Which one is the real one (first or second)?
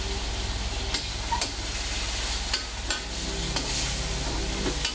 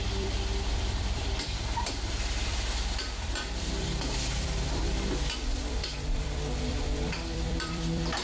first